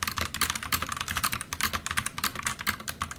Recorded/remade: recorded